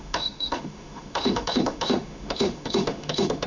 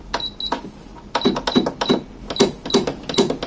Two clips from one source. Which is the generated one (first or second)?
first